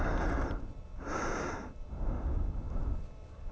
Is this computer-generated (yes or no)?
no